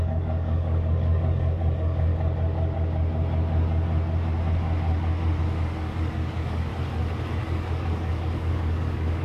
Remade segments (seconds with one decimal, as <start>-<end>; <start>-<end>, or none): 0.0-2.1; 5.4-6.7; 7.4-9.2